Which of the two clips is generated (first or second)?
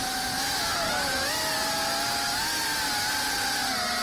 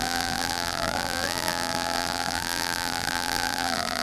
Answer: second